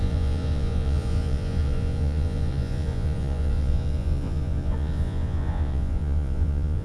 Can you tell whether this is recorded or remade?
remade